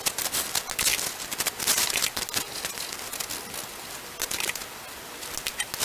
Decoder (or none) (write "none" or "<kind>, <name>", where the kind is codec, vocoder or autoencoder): none